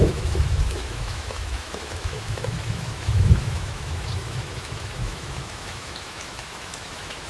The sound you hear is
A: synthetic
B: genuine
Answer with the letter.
A